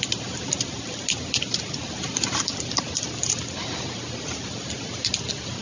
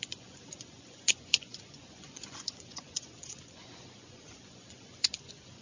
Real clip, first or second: first